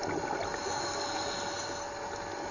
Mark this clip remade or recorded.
recorded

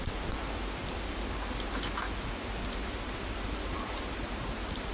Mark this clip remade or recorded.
recorded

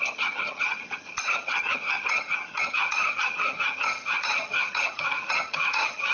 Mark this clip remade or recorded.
remade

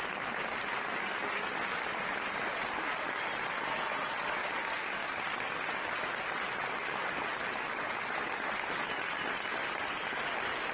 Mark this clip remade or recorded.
recorded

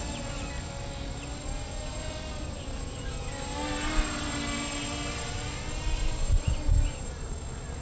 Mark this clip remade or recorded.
recorded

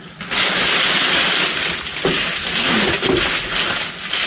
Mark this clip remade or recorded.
recorded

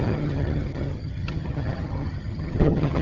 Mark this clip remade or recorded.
remade